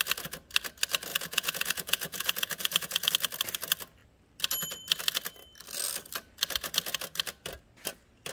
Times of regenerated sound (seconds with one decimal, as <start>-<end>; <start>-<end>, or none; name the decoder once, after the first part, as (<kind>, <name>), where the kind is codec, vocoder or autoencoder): 1.1-3.1 (vocoder, Vocos)